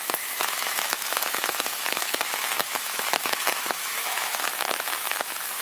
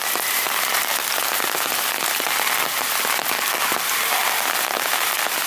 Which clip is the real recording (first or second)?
second